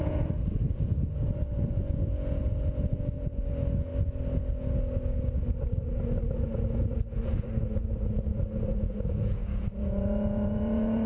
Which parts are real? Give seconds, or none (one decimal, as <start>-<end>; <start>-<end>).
3.9-6.3